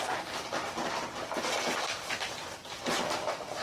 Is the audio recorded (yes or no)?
yes